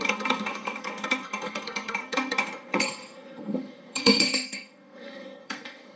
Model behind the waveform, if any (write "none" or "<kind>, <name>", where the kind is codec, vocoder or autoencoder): codec, SNAC